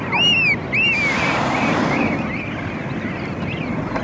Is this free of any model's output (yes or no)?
yes